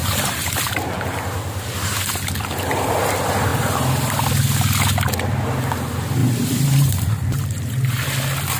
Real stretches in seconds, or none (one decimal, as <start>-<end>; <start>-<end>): 0.7-6.2; 8.0-8.6